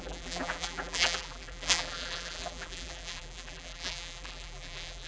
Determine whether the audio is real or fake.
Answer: fake